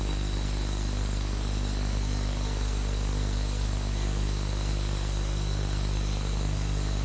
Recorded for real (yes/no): no